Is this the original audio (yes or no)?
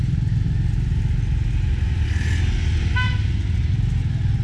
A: yes